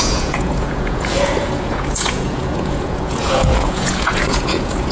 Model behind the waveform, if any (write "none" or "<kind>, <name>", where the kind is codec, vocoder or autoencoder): vocoder, Vocos